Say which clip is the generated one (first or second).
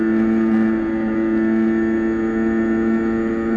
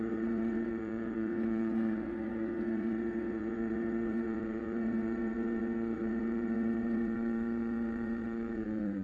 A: second